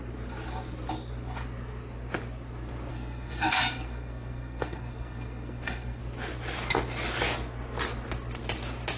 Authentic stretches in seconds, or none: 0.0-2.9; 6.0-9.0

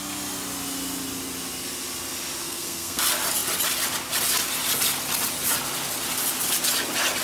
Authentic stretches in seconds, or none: 0.0-2.4; 3.0-7.2

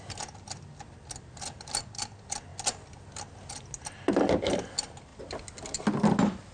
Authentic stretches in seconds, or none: 0.0-6.5